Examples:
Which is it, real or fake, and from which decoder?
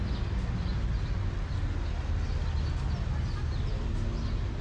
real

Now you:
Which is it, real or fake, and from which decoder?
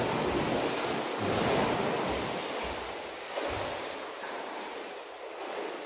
real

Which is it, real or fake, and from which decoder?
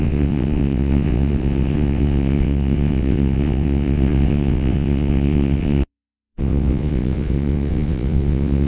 fake, vocoder, WaveNeXt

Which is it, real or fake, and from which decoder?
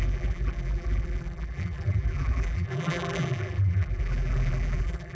fake, vocoder, BigVGAN v2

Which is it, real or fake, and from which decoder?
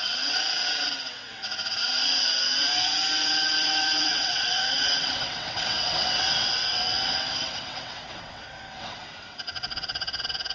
fake, vocoder, WaveNeXt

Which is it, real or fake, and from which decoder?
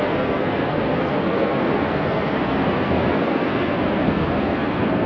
fake, codec, SNAC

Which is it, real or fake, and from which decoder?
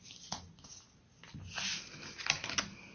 real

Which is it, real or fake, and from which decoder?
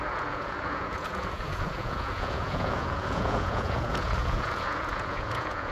fake, vocoder, Vocos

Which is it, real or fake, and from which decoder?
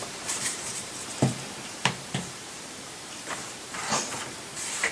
fake, vocoder, BigVGAN v2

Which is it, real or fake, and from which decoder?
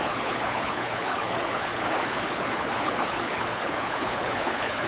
fake, codec, HILCodec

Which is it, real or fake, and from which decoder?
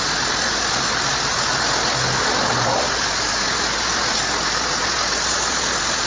real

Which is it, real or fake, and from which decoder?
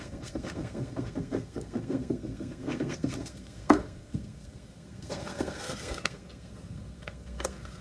fake, codec, SNAC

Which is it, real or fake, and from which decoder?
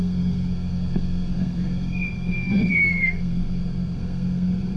fake, codec, SNAC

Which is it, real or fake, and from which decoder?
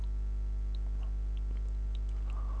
real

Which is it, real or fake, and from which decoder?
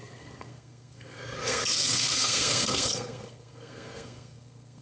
fake, codec, SNAC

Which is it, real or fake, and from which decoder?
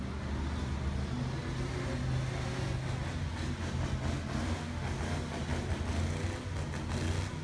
real